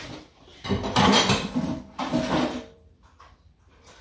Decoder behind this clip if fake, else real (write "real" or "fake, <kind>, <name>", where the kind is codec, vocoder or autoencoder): fake, vocoder, BigVGAN v2